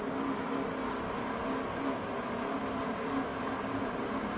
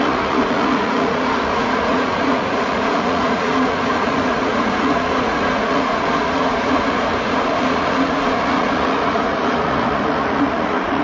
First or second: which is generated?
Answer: second